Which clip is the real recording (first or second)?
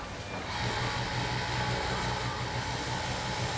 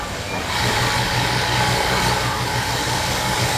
first